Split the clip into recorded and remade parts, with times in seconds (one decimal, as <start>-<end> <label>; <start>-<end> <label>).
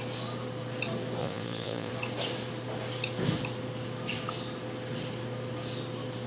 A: 0.0-1.2 recorded; 1.2-1.9 remade; 1.9-6.3 recorded